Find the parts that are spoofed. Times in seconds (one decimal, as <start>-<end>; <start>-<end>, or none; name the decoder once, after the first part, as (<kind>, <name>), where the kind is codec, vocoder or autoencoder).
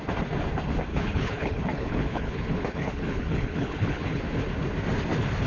0.9-4.2 (codec, HILCodec)